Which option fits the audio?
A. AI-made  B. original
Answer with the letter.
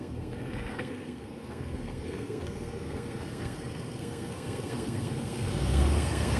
A